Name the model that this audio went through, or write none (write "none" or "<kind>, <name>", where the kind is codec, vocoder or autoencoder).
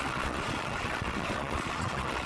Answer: vocoder, Vocos